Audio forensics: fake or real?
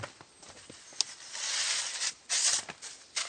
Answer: real